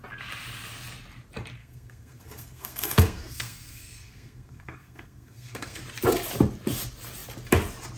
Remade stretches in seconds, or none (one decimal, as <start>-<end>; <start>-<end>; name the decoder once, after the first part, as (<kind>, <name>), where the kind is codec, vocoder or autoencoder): 1.6-5.8 (codec, SNAC)

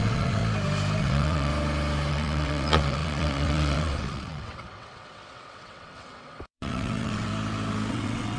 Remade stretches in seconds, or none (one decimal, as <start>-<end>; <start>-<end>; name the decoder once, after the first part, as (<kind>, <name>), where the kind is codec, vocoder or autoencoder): 0.0-0.4 (vocoder, WaveNeXt); 1.0-1.5; 2.1-7.3; 7.9-8.4

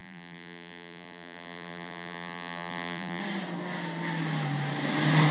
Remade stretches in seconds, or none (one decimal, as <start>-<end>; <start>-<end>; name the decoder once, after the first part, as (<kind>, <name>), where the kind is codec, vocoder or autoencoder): 0.0-3.2 (vocoder, BigVGAN v2)

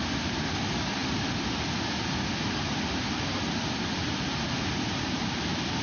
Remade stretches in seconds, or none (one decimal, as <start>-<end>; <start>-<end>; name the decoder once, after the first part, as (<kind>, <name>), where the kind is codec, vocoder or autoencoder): none

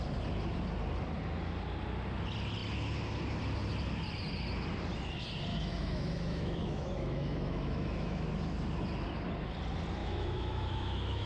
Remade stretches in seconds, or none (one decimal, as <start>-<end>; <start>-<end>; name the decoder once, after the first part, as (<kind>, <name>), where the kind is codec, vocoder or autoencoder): 5.5-8.3 (autoencoder, DAC-VAE); 10.0-11.3